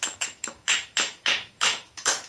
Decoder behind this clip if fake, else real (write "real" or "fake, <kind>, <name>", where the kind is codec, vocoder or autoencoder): fake, autoencoder, DAC-VAE